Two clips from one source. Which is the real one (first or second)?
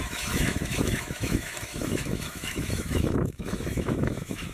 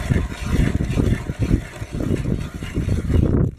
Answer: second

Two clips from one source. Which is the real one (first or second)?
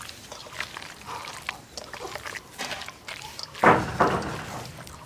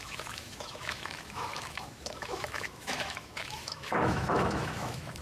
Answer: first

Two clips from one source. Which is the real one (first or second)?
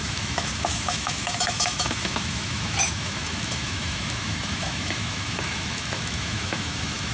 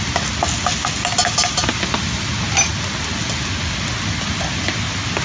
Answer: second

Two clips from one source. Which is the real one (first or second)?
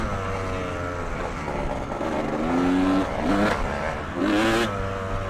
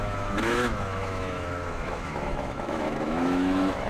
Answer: first